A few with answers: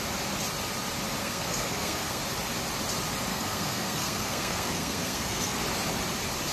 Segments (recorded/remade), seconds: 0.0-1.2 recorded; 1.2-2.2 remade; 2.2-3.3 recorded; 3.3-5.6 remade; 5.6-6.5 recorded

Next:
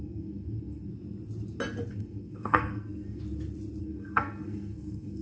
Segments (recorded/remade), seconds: 0.0-0.9 remade; 0.9-1.9 recorded; 1.9-3.2 remade; 3.2-3.8 recorded; 3.8-5.2 remade

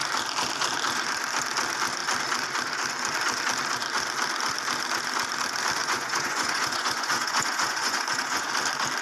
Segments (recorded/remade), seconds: 0.0-5.8 recorded; 5.8-8.5 remade; 8.5-9.0 recorded

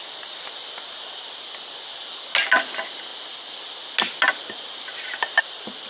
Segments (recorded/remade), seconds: 0.0-5.9 recorded

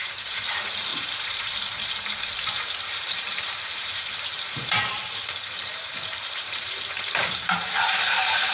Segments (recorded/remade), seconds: 0.0-8.5 remade

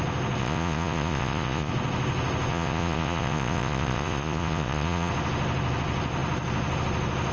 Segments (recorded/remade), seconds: 0.0-0.4 recorded; 0.4-1.7 remade; 1.7-2.5 recorded; 2.5-5.1 remade; 5.1-7.3 recorded